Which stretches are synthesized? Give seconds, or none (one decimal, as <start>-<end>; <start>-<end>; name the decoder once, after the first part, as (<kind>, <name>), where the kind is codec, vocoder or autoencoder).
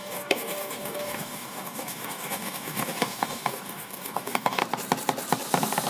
0.0-4.6 (codec, DAC)